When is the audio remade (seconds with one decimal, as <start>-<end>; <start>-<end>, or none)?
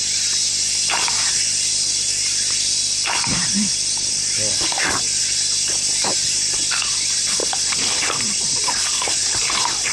1.7-6.7; 7.4-8.7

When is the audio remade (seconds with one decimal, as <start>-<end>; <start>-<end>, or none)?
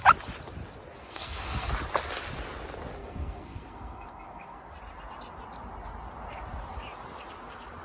1.0-1.7; 3.0-4.6